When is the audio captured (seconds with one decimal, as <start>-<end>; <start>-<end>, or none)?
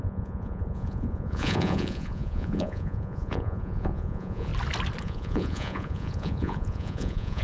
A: 4.5-5.0